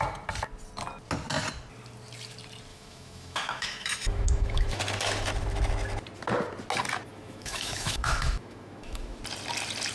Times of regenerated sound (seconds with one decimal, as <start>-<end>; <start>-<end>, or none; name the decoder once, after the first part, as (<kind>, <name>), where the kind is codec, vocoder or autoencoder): 2.7-4.8 (autoencoder, DAC-VAE); 7.1-9.2